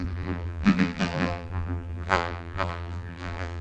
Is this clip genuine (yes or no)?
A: no